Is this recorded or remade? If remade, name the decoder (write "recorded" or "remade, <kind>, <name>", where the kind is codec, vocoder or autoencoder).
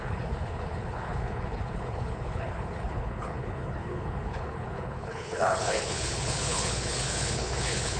remade, codec, HILCodec